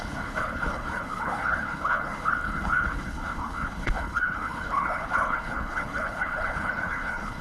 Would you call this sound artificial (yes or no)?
yes